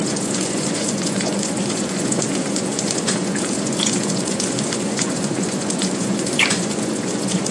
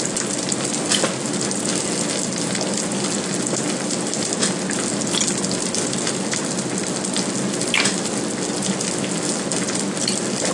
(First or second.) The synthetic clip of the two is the first